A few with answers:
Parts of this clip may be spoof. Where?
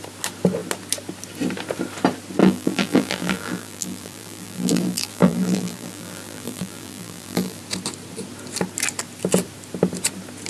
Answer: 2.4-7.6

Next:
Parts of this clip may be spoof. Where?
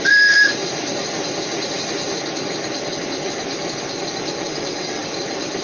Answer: 4.5-5.0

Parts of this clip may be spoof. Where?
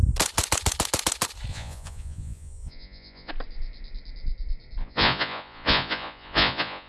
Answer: 1.5-3.3; 4.8-6.9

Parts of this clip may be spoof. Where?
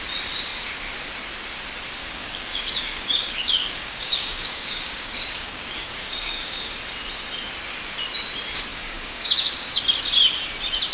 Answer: 2.0-6.7; 8.7-9.8